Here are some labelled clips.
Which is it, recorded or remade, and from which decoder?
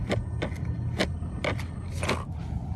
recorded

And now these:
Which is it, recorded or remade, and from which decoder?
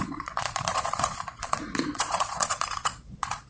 remade, vocoder, Vocos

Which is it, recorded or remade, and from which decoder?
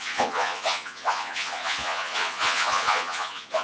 remade, vocoder, Vocos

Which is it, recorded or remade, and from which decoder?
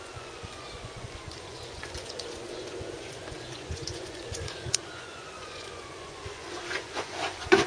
remade, vocoder, Vocos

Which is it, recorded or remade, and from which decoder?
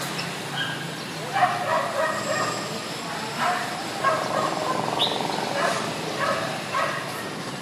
recorded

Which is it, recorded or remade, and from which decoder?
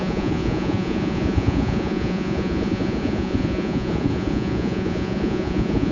remade, vocoder, Vocos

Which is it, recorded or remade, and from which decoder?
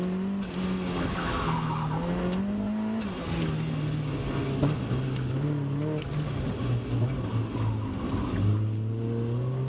recorded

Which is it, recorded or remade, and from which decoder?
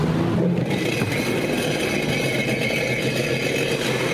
recorded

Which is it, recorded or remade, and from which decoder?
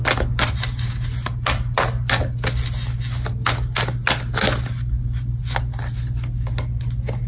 recorded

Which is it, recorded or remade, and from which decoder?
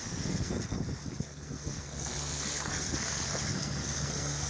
remade, codec, SNAC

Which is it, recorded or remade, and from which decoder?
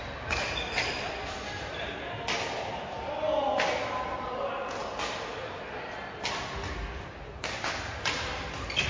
recorded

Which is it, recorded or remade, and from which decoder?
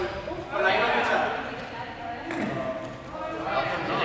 recorded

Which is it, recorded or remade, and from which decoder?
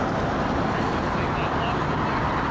recorded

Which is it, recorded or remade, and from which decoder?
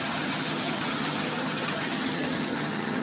remade, vocoder, HiFi-GAN